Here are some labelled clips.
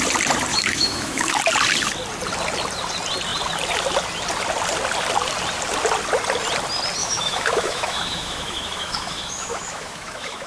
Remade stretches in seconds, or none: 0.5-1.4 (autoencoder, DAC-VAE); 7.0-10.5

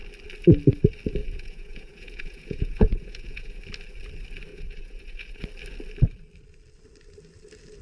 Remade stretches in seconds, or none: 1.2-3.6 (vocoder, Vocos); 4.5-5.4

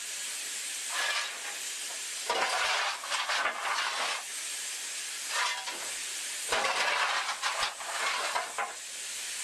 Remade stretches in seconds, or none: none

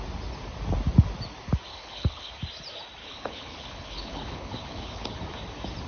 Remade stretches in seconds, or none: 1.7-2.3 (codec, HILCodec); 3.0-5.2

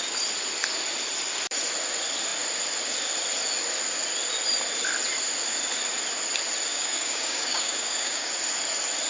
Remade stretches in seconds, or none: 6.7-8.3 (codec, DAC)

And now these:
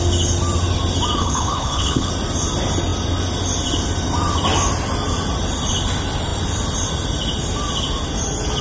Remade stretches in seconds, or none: 1.2-2.1 (codec, HILCodec)

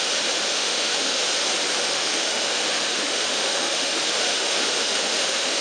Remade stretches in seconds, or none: 0.5-1.2 (autoencoder, DAC-VAE); 1.8-5.6